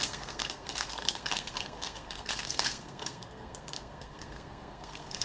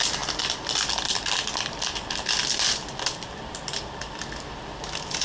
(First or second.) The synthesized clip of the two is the first